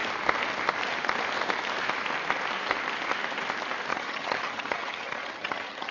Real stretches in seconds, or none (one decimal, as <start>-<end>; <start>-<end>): 0.0-3.9